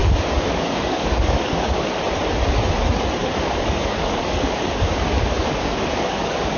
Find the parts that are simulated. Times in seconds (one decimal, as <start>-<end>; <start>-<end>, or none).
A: 0.0-1.9; 3.2-6.6